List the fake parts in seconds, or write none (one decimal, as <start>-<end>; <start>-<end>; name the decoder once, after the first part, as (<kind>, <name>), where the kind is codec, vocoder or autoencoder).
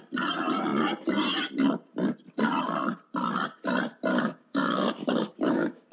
4.1-5.9 (codec, DAC)